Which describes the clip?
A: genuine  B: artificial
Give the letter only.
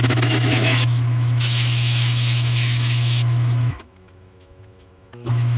B